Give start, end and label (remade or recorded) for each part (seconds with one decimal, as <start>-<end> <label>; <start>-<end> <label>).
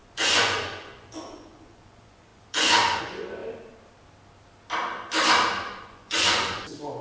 0.0-3.4 remade; 3.4-5.8 recorded; 5.8-7.0 remade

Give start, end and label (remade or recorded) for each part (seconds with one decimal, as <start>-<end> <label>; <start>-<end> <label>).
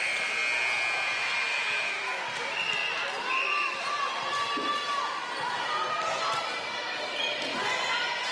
0.0-7.5 recorded; 7.5-8.3 remade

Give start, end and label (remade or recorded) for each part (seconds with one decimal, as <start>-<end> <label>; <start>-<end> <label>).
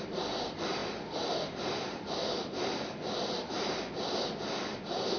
0.0-5.2 recorded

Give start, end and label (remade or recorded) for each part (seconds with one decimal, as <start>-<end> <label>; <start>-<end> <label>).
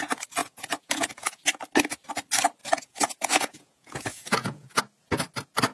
0.0-0.4 recorded; 0.4-1.4 remade; 1.4-2.6 recorded; 2.6-4.8 remade; 4.8-5.7 recorded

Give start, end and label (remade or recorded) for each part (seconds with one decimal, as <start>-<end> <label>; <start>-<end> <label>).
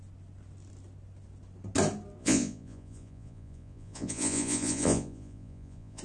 0.0-2.2 recorded; 2.2-6.0 remade